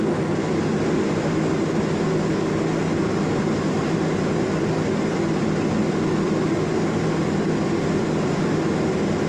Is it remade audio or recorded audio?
recorded